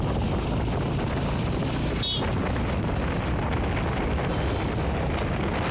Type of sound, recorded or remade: recorded